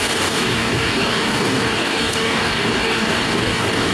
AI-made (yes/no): yes